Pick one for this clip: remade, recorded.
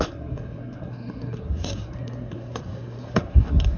remade